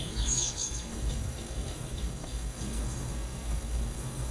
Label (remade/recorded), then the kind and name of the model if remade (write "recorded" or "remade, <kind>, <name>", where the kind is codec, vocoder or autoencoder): remade, codec, SNAC